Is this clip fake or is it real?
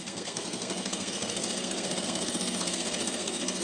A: fake